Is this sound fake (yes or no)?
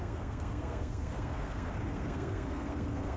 yes